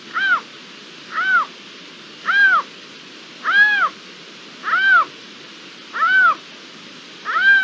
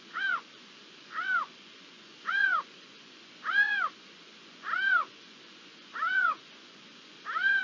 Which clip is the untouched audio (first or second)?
first